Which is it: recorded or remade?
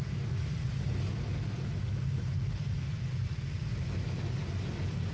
recorded